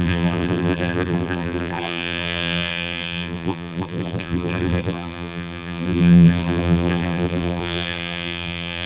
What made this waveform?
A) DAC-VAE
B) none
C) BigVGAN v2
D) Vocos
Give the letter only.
C